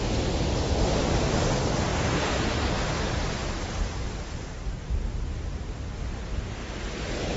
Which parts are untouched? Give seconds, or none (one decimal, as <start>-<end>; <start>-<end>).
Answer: 0.0-1.9; 6.1-6.6